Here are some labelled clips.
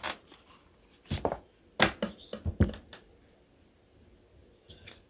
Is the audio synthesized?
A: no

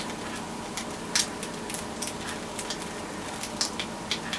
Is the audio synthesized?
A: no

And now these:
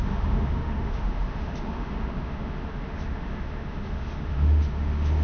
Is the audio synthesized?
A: yes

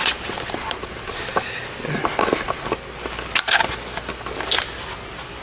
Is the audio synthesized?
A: no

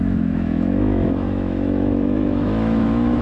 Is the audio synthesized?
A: yes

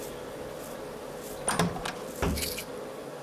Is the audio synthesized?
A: no